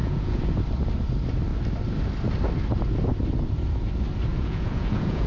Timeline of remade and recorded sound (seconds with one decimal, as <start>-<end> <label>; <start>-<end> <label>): 0.0-0.5 remade; 0.5-4.3 recorded; 4.3-5.3 remade